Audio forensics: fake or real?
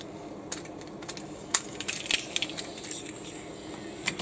real